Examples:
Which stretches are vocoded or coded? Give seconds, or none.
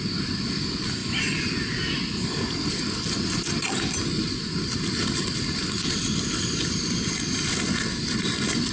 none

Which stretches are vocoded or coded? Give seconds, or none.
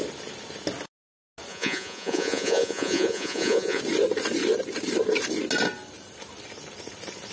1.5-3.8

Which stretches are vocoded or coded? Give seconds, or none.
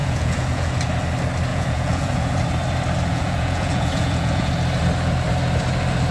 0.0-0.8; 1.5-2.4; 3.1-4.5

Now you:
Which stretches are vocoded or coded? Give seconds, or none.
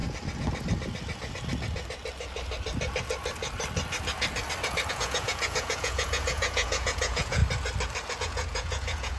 4.9-7.4; 8.2-9.2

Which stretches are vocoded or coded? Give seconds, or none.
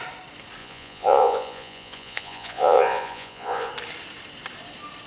0.6-3.7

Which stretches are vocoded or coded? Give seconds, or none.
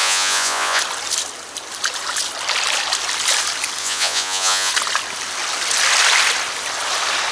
0.0-0.8; 3.8-4.7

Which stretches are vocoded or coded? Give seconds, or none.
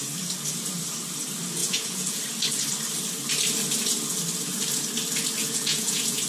1.6-2.2; 5.4-6.3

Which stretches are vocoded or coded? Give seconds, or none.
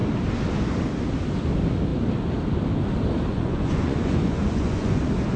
3.3-5.0